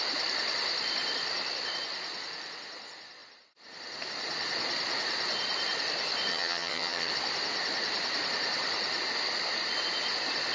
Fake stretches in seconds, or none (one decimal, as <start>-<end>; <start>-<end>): 6.3-7.1

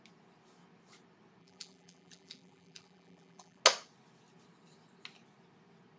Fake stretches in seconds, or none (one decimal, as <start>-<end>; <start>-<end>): 1.4-3.6

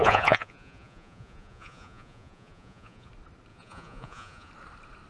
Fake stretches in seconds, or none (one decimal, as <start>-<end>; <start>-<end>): 0.0-3.1; 3.5-4.5

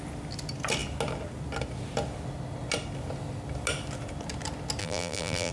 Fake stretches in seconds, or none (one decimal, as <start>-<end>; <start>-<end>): 4.8-5.5

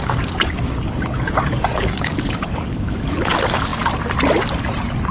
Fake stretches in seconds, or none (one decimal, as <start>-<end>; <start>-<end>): 0.0-3.1

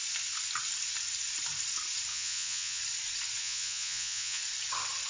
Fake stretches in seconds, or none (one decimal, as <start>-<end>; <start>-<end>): 2.1-2.8; 3.4-4.4

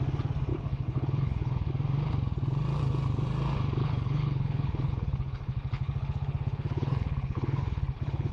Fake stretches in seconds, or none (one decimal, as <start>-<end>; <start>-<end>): 0.5-1.7; 3.8-8.3